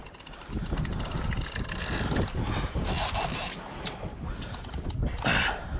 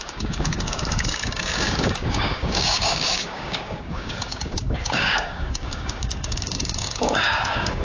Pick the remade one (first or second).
second